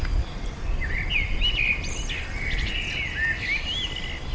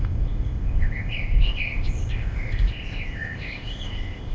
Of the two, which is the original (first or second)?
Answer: first